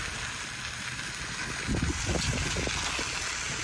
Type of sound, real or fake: real